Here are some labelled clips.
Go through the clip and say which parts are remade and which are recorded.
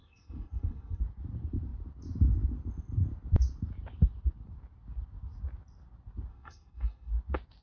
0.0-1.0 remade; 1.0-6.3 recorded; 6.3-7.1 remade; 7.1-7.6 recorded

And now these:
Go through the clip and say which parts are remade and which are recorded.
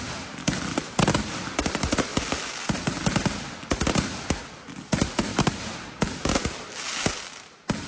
0.0-5.3 recorded; 5.3-6.6 remade; 6.6-7.9 recorded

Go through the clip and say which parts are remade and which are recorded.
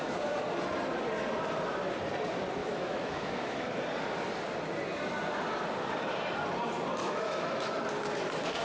0.0-2.6 recorded; 2.6-3.8 remade; 3.8-7.0 recorded; 7.0-7.9 remade; 7.9-8.6 recorded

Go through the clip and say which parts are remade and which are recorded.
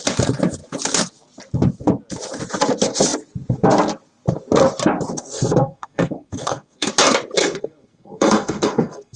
0.0-5.1 recorded; 5.1-6.9 remade; 6.9-7.4 recorded; 7.4-9.2 remade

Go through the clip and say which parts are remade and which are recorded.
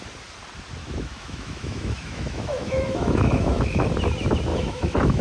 0.0-0.8 recorded; 0.8-3.9 remade; 3.9-4.5 recorded; 4.5-5.2 remade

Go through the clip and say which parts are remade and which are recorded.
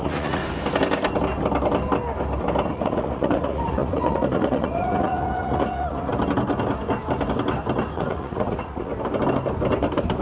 0.0-0.4 remade; 0.4-2.7 recorded; 2.7-6.1 remade; 6.1-7.9 recorded; 7.9-8.9 remade; 8.9-10.2 recorded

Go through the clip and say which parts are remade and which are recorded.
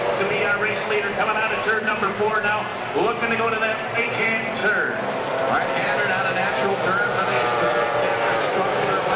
0.0-2.7 remade; 2.7-3.4 recorded; 3.4-4.6 remade; 4.6-6.5 recorded; 6.5-9.2 remade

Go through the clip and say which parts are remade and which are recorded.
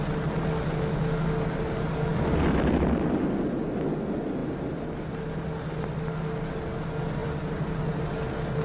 0.0-7.2 recorded; 7.2-8.0 remade; 8.0-8.6 recorded